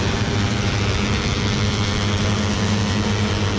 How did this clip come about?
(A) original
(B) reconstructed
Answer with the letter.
A